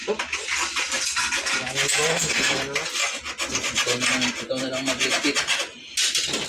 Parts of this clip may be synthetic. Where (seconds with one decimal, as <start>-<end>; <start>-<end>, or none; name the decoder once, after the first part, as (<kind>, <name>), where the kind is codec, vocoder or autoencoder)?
2.1-2.6 (codec, SNAC)